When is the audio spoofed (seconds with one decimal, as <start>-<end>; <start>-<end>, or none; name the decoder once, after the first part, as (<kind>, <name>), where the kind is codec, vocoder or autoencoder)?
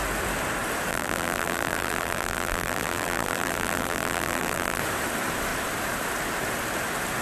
0.9-4.8 (vocoder, BigVGAN v2)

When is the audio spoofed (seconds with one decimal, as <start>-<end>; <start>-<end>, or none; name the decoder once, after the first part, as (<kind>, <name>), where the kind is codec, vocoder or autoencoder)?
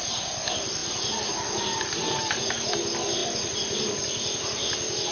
none